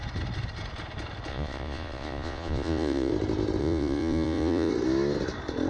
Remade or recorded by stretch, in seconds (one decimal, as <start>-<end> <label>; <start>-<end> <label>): 0.0-1.3 recorded; 1.3-3.1 remade; 3.1-3.6 recorded; 3.6-4.7 remade; 4.7-5.7 recorded